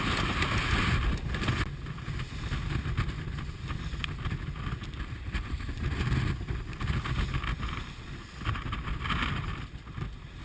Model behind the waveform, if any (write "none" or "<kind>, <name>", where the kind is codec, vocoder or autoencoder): none